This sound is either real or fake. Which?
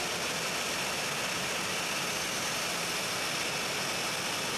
real